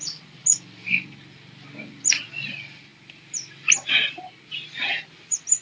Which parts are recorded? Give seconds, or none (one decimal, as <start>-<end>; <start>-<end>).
0.0-5.6